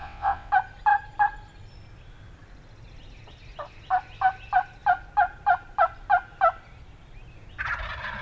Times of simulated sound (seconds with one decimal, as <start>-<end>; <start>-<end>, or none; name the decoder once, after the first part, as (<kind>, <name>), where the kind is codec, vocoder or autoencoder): 0.0-0.5 (vocoder, WaveNeXt)